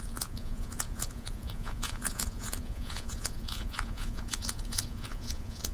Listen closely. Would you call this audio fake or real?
fake